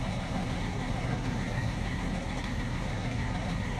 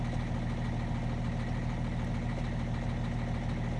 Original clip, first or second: second